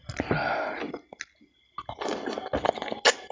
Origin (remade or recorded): recorded